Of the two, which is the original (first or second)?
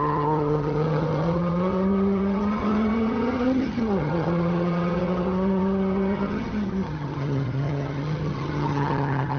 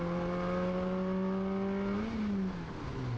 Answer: second